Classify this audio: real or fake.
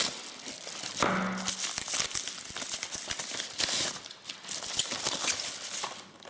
real